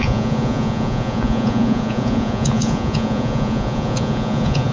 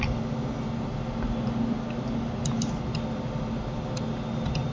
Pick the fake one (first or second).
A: first